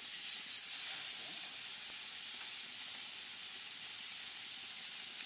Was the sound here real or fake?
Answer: real